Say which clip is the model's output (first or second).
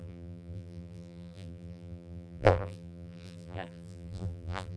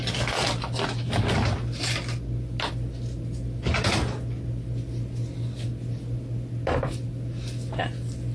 first